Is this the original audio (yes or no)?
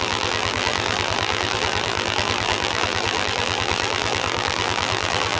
no